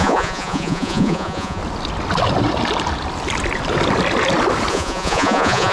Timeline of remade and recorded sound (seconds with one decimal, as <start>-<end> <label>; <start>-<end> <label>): 0.0-1.6 remade; 1.6-4.7 recorded; 4.7-5.7 remade